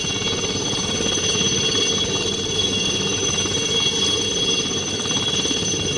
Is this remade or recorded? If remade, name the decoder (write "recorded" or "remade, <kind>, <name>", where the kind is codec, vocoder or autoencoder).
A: recorded